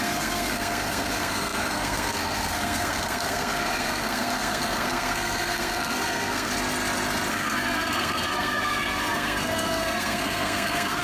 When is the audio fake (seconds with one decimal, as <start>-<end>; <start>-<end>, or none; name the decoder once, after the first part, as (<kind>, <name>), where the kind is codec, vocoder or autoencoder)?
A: 0.0-6.5 (codec, SNAC); 7.3-11.0

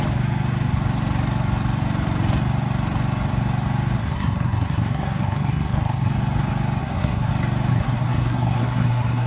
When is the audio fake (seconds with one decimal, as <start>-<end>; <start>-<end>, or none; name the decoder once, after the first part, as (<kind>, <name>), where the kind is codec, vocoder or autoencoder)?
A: 4.0-6.1 (codec, SNAC); 6.8-7.3; 7.7-9.3

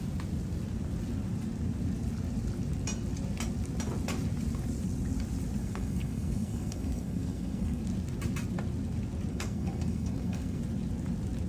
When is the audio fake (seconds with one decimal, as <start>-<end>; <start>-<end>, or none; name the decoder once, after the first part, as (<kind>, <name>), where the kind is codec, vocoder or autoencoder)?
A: 5.6-7.8 (codec, SNAC); 9.3-10.6

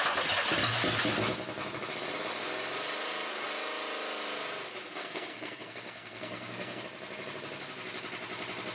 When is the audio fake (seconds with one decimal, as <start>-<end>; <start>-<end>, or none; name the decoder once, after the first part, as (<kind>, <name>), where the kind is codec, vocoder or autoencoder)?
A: 5.0-6.8 (codec, SNAC)

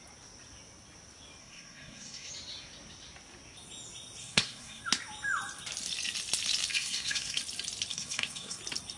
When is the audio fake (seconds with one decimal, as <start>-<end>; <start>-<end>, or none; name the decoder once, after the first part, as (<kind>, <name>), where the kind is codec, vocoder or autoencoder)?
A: 1.4-2.3 (codec, SNAC); 4.2-4.8; 6.7-7.4; 7.9-8.6

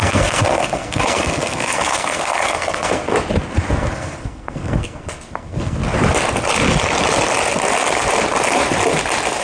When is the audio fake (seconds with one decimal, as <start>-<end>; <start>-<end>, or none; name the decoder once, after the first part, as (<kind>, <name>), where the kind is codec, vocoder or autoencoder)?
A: 0.0-3.1 (codec, SNAC); 3.7-5.8